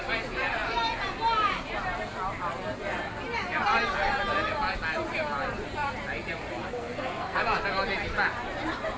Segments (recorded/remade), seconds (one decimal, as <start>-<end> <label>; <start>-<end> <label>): 0.0-6.6 recorded; 6.6-7.4 remade; 7.4-9.0 recorded